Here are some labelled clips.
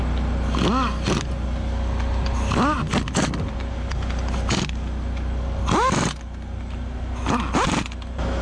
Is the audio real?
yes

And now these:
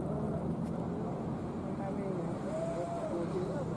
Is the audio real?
yes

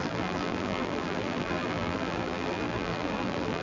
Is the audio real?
no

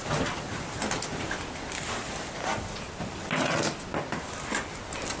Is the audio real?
yes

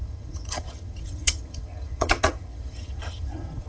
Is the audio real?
no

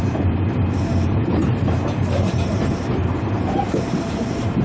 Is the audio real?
no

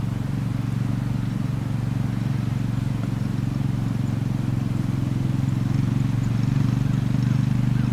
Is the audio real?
yes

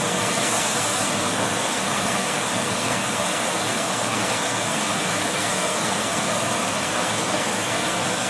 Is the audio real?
no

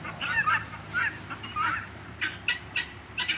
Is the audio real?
no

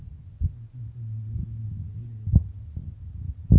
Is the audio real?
yes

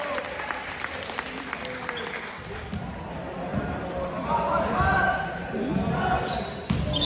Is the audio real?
yes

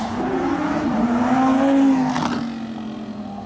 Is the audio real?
yes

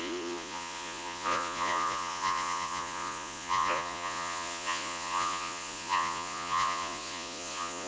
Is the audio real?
no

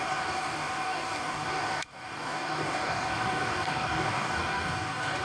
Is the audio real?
no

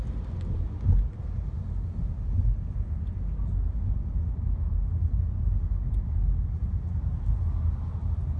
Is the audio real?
yes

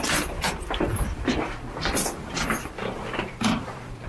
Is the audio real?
no